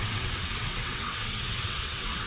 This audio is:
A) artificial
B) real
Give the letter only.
A